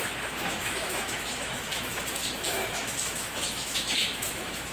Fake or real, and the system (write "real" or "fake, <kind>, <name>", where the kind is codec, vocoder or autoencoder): fake, autoencoder, DAC-VAE